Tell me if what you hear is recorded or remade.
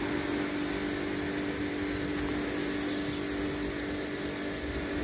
recorded